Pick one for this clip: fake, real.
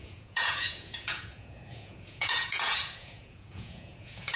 fake